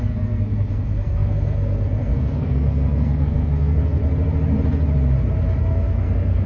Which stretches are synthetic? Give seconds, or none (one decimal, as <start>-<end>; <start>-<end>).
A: 0.0-4.0; 5.6-6.5